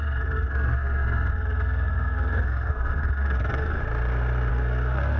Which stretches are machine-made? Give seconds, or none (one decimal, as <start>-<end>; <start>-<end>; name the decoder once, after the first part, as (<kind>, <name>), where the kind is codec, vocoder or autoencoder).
0.0-3.8 (codec, SNAC); 4.5-5.2